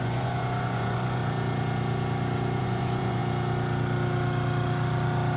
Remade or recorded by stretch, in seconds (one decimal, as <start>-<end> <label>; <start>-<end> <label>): 0.0-1.2 remade; 1.2-2.6 recorded; 2.6-3.2 remade; 3.2-5.4 recorded